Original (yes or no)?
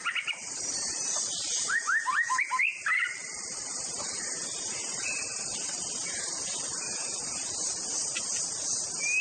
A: yes